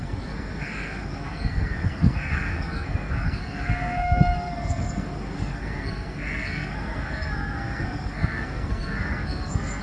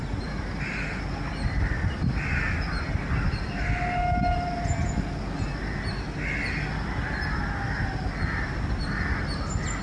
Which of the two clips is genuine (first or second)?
second